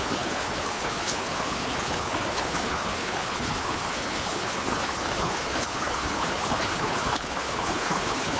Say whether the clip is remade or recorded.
remade